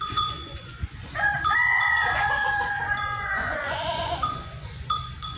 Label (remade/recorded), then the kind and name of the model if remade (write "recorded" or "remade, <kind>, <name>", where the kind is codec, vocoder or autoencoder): remade, vocoder, Vocos